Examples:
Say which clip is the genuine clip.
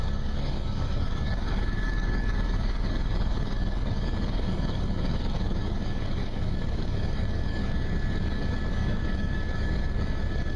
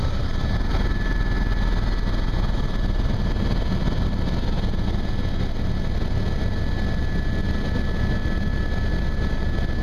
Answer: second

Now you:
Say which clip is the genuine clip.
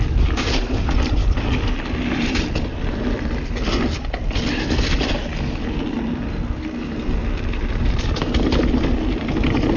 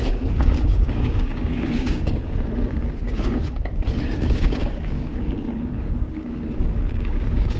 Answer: first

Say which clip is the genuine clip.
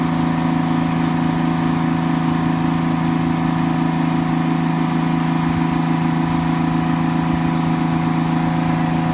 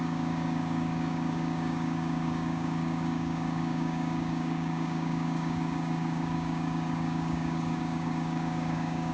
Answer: first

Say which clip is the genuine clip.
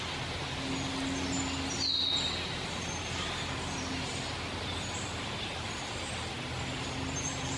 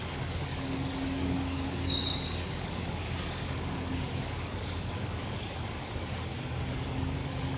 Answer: first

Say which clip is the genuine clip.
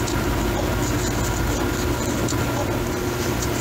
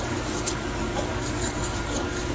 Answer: first